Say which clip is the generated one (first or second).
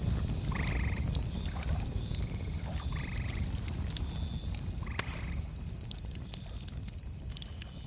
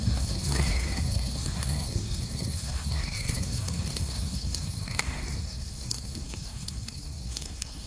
second